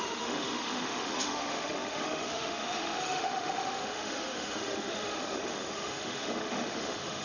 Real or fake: fake